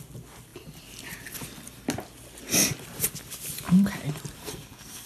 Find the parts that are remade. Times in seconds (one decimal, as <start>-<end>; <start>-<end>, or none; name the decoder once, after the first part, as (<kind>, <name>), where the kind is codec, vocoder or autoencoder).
4.4-5.1 (codec, SNAC)